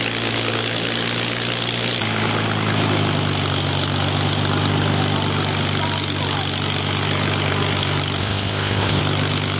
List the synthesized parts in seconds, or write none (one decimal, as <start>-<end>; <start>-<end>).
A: 8.2-9.0